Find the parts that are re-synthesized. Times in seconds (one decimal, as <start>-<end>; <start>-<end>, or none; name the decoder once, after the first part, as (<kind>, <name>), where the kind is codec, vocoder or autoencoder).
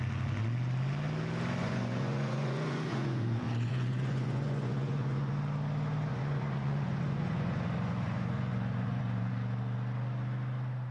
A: 1.6-5.3 (vocoder, Vocos); 6.1-9.3